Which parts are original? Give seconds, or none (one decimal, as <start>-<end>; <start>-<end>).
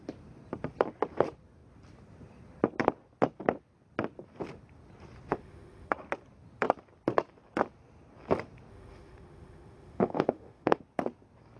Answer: 0.0-5.3; 5.9-8.7; 10.8-11.6